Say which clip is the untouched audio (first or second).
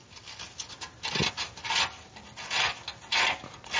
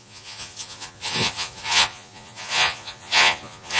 first